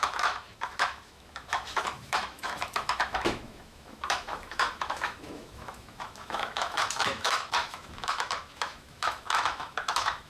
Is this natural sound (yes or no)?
no